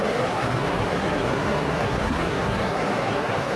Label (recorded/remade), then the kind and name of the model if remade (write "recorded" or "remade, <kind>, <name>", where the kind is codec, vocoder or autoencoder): remade, codec, SNAC